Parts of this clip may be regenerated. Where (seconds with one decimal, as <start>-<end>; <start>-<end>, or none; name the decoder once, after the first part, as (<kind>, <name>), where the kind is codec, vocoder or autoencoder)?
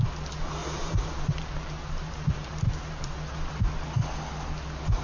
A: 0.6-3.6 (vocoder, BigVGAN v2)